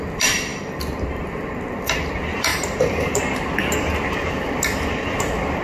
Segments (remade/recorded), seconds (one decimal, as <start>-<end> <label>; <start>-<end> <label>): 0.0-2.5 recorded; 2.5-3.2 remade; 3.2-5.6 recorded